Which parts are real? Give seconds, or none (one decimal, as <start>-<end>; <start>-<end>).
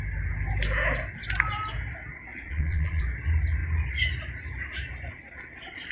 0.0-2.3; 3.0-5.9